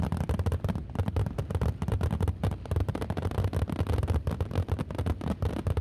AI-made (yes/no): no